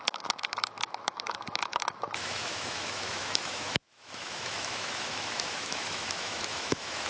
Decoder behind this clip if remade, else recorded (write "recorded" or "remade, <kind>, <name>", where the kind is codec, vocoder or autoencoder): remade, autoencoder, DAC-VAE